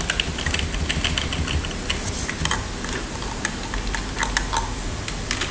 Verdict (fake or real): real